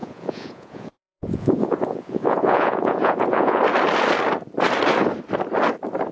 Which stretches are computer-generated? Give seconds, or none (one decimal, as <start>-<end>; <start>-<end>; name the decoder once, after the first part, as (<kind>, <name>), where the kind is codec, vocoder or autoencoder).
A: 0.0-3.6 (vocoder, Vocos)